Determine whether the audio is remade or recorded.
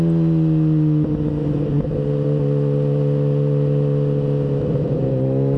recorded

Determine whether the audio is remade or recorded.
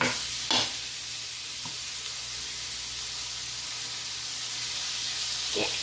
recorded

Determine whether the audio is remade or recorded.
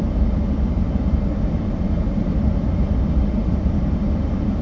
remade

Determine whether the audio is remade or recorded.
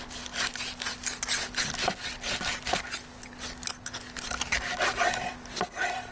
recorded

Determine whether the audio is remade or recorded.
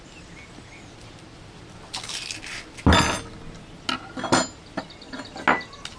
recorded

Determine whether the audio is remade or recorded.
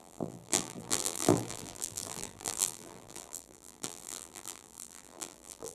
remade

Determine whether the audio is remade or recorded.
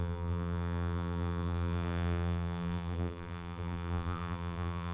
remade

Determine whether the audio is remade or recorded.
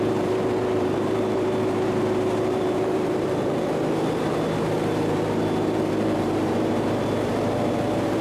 remade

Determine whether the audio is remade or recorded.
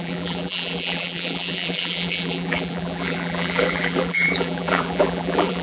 remade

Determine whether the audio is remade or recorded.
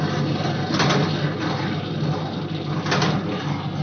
recorded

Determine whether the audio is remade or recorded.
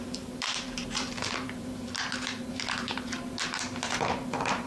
remade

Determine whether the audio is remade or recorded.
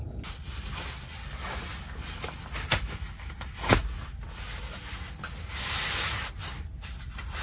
recorded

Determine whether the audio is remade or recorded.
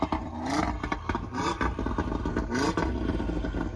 recorded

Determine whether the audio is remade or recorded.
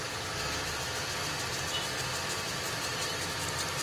recorded